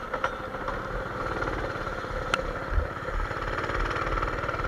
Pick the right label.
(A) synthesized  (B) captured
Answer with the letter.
B